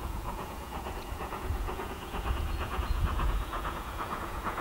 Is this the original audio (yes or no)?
no